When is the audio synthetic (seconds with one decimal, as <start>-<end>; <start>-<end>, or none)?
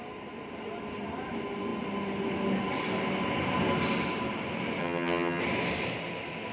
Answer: 4.8-5.4